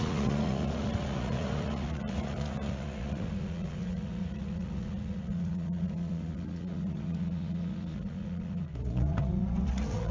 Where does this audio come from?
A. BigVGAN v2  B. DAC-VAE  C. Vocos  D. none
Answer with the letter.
C